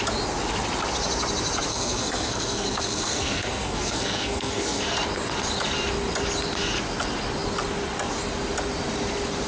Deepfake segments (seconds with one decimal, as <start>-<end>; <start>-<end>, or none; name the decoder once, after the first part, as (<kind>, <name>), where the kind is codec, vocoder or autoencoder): 1.7-4.8 (codec, SNAC)